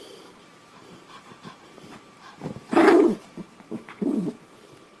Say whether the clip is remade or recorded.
remade